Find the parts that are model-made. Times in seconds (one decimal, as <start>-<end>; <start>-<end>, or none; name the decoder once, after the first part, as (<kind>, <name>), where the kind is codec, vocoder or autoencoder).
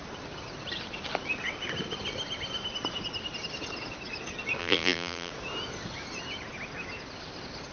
4.6-5.3 (vocoder, BigVGAN v2)